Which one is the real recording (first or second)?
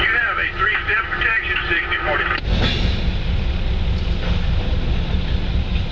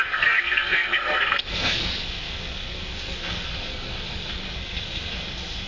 first